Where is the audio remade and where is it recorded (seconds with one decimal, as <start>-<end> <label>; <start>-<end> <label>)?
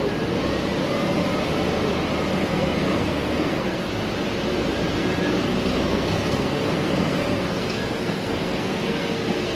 0.0-2.4 recorded; 2.4-3.9 remade; 3.9-4.9 recorded; 4.9-9.6 remade